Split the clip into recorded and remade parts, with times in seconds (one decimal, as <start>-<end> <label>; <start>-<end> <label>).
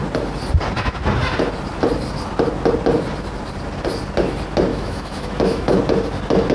0.0-4.7 recorded; 4.7-5.8 remade; 5.8-6.5 recorded